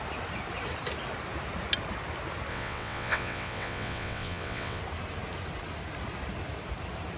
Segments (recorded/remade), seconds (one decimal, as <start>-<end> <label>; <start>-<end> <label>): 0.0-2.5 recorded; 2.5-4.8 remade; 4.8-7.2 recorded